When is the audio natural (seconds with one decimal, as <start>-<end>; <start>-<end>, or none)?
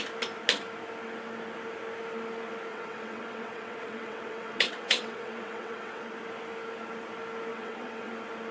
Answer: 0.0-2.7; 6.1-7.5; 8.1-8.5